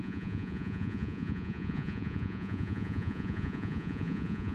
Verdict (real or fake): fake